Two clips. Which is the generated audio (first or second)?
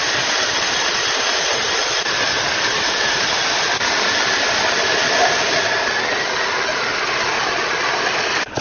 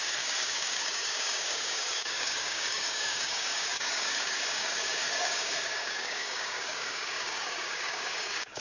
second